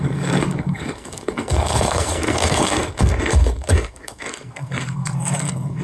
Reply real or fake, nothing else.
fake